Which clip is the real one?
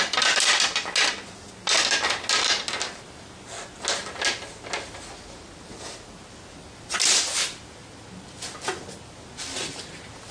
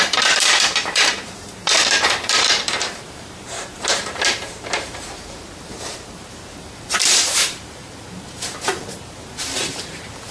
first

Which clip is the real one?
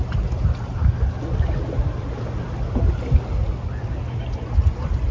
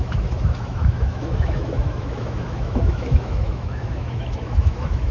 first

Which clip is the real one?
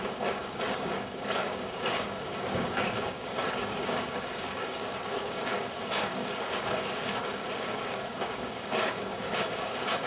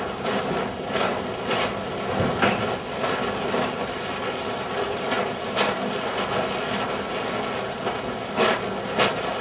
second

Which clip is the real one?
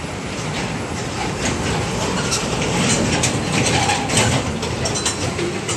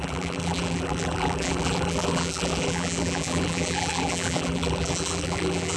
first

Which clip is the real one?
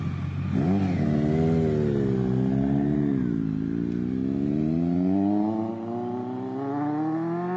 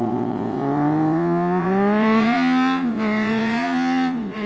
first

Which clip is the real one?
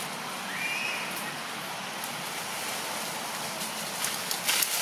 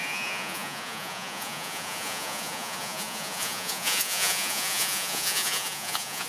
first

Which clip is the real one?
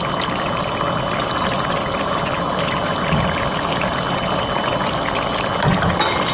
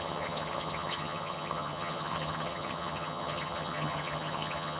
first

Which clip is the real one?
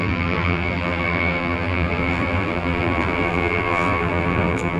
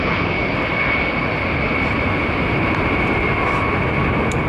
second